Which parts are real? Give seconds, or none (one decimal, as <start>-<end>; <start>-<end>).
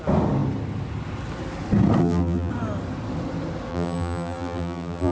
0.0-2.0; 2.5-3.7